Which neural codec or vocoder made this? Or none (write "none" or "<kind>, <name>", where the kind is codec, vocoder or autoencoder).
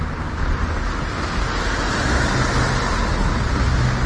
none